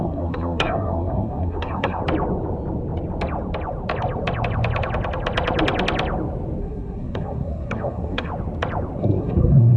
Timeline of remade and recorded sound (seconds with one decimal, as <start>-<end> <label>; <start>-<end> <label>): 0.0-2.0 remade; 2.0-6.6 recorded; 6.6-8.3 remade; 8.3-9.0 recorded; 9.0-9.8 remade